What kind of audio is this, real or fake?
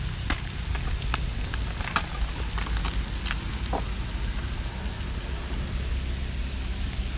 real